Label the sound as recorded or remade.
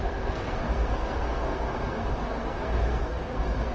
remade